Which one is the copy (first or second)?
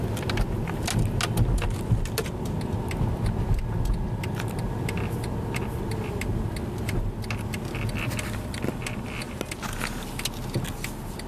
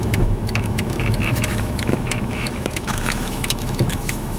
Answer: second